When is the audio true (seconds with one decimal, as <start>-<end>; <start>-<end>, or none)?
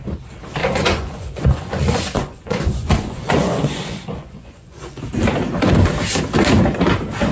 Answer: 0.0-0.6; 5.0-7.3